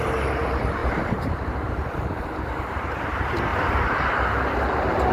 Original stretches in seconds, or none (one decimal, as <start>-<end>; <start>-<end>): 3.5-4.3